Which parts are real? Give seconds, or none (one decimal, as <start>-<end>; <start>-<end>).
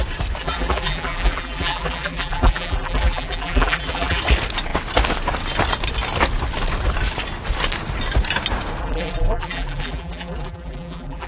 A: 0.0-0.4; 4.2-8.8